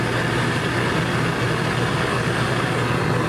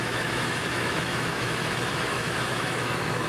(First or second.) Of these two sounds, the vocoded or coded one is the second